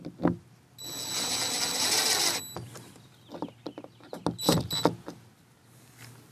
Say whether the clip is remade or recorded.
recorded